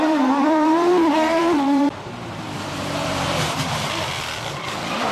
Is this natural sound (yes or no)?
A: no